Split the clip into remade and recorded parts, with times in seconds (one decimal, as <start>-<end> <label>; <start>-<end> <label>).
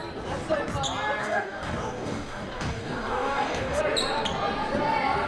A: 0.0-1.2 recorded; 1.2-3.8 remade; 3.8-5.3 recorded